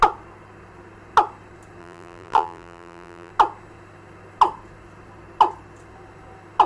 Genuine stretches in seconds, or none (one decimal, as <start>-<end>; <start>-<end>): 0.0-1.8; 3.3-6.7